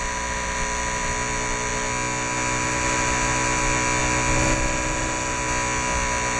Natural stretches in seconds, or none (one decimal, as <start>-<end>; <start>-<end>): 0.0-6.4